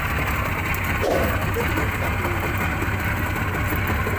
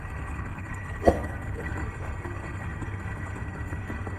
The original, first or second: first